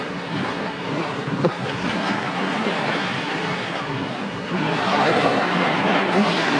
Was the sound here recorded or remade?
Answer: remade